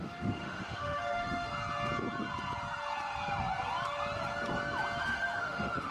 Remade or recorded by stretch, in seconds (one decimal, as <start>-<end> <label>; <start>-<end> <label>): 0.0-1.5 remade; 1.5-5.0 recorded; 5.0-5.9 remade

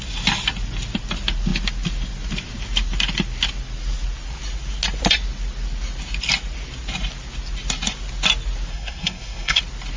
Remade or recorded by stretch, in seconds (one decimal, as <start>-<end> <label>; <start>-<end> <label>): 0.0-8.7 recorded; 8.7-9.6 remade; 9.6-10.0 recorded

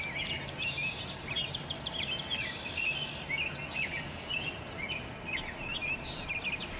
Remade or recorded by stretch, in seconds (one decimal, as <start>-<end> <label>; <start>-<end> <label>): 0.0-6.8 recorded

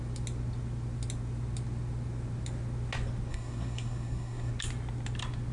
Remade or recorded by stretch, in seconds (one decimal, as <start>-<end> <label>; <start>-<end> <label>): 0.0-3.3 recorded; 3.3-4.5 remade; 4.5-5.5 recorded

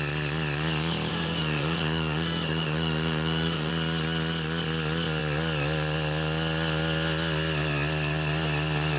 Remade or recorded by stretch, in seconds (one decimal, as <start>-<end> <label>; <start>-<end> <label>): 0.0-1.1 recorded; 1.1-3.7 remade; 3.7-9.0 recorded

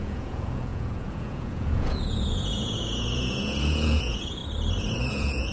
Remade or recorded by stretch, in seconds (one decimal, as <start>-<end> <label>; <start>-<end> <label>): 0.0-4.4 remade; 4.4-5.1 recorded; 5.1-5.5 remade

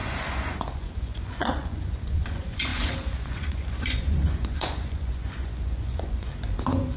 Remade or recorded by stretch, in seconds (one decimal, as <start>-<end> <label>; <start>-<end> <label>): 0.0-7.0 remade

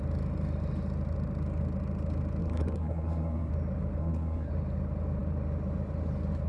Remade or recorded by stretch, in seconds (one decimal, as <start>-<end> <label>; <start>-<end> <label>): 0.0-2.4 recorded; 2.4-3.5 remade; 3.5-4.0 recorded; 4.0-4.5 remade; 4.5-6.5 recorded